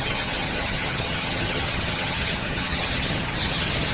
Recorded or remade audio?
remade